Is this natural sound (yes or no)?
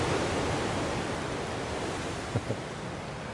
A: yes